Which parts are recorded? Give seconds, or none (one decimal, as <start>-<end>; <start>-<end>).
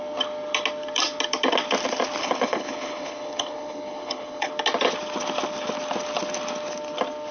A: 0.0-2.2; 4.5-7.3